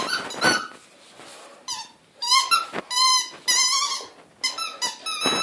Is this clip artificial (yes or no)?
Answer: no